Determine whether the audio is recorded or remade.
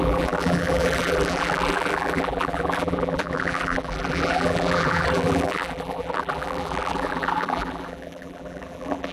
remade